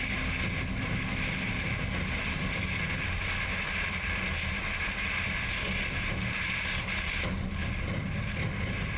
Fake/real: real